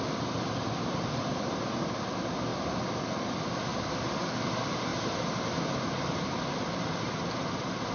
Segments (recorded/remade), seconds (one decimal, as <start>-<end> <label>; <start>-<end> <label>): 0.0-7.9 recorded